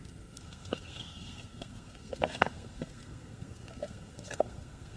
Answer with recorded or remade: remade